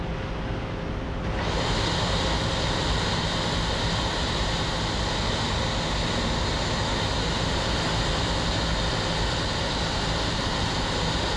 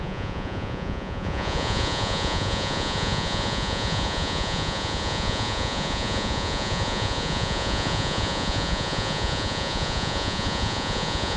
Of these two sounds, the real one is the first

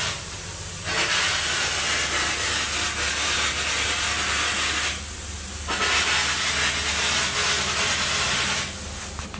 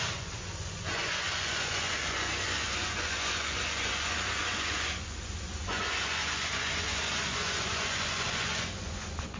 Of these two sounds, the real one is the first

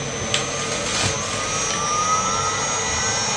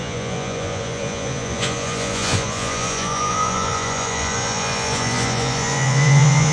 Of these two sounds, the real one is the first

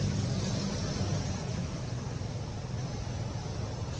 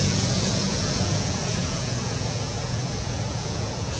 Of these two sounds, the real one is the first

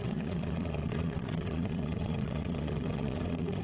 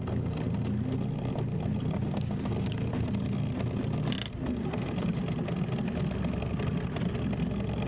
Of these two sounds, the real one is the second